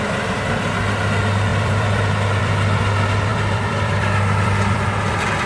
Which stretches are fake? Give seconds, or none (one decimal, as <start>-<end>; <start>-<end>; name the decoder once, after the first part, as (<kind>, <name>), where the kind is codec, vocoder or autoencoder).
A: 1.5-2.8 (vocoder, BigVGAN v2); 3.3-5.5